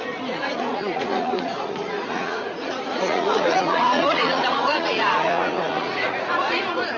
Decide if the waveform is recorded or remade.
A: remade